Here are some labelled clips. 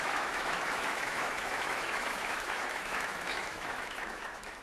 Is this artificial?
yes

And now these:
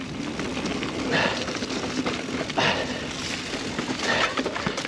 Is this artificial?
no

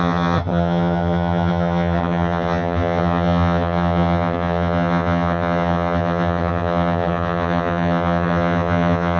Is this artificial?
yes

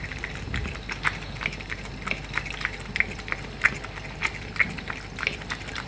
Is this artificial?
no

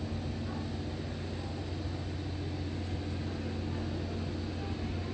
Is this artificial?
no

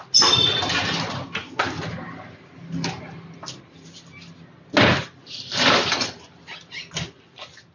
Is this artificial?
no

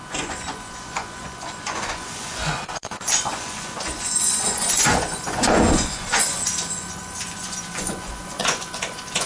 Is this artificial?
yes